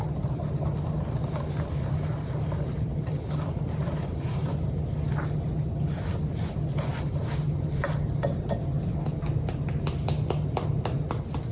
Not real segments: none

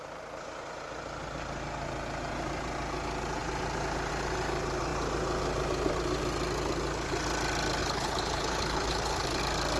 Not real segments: 7.8-9.4 (codec, HILCodec)

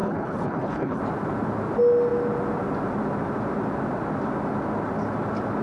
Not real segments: 0.0-1.0 (codec, HILCodec)

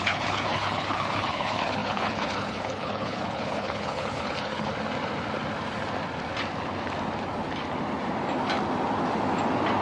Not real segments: 0.0-4.7 (codec, HILCodec)

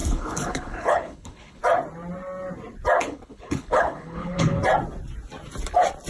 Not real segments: 0.0-1.6 (codec, HILCodec); 3.0-4.6